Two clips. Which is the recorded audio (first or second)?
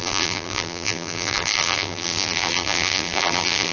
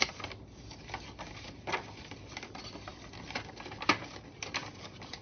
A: second